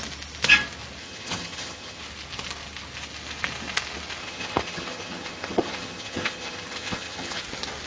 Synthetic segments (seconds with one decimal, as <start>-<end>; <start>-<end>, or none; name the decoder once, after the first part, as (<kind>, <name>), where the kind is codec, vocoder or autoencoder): 1.0-2.0 (vocoder, HiFi-GAN); 4.2-7.4